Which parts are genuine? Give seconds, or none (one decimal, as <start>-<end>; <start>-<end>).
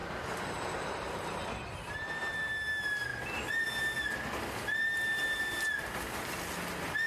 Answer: 1.4-7.1